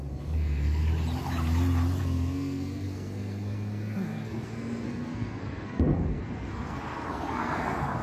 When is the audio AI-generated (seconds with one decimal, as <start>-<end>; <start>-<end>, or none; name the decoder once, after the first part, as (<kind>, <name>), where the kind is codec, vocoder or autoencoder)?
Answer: 0.0-0.8 (codec, SNAC); 2.0-8.0